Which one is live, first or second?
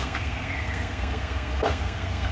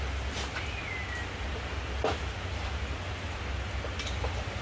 second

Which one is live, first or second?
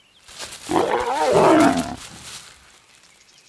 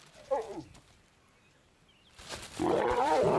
first